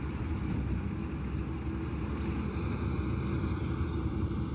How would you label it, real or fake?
real